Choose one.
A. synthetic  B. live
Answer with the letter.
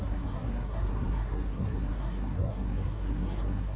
A